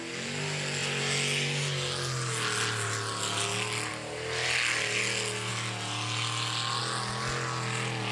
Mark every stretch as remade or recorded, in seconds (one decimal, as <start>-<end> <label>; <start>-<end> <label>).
0.0-8.1 recorded